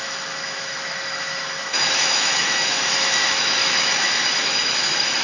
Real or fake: fake